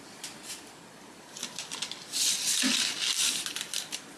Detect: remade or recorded recorded